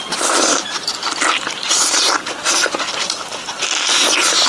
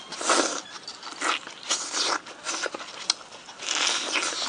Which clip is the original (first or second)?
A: second